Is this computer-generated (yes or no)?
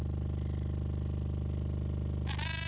no